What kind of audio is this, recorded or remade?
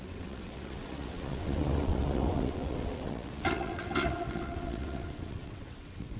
remade